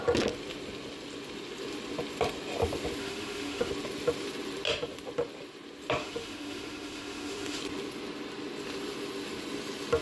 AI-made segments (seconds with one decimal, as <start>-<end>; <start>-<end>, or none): 3.0-3.7; 6.0-7.6